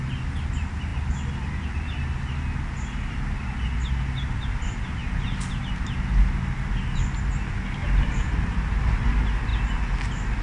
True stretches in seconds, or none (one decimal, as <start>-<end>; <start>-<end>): 0.0-7.8; 8.9-10.4